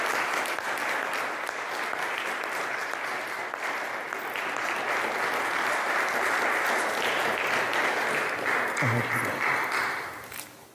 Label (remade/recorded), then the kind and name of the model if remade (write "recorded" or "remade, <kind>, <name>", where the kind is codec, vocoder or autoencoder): recorded